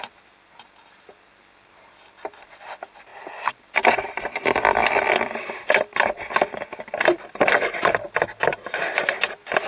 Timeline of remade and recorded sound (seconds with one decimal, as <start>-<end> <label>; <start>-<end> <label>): 0.0-3.1 recorded; 3.1-7.5 remade; 7.5-9.7 recorded